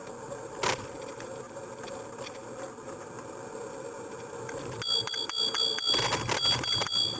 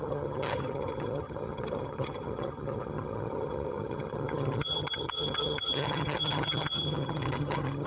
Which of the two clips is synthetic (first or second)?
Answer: second